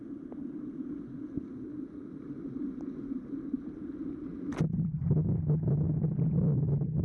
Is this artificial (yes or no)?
no